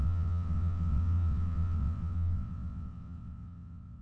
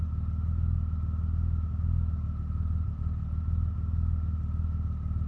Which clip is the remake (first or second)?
first